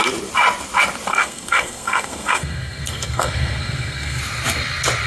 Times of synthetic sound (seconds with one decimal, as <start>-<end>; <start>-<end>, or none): 1.1-4.2